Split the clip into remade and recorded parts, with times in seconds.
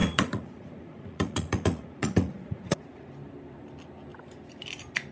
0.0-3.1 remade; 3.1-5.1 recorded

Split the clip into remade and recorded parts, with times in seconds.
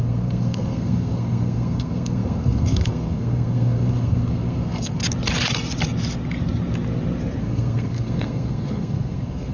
0.0-5.0 remade; 5.0-7.4 recorded; 7.4-9.5 remade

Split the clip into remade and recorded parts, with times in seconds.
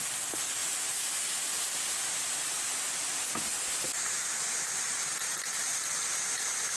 0.0-6.8 recorded